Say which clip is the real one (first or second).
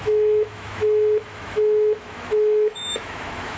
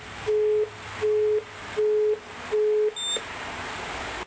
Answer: second